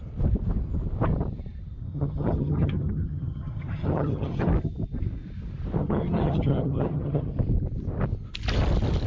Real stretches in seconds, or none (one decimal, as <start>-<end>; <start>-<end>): 0.0-1.8; 4.5-5.8; 7.3-9.1